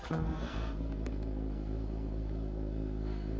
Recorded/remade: remade